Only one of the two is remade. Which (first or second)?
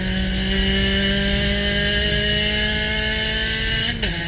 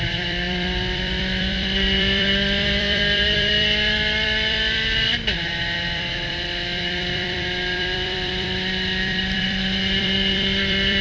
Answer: second